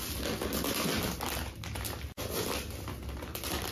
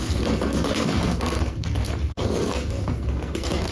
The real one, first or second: first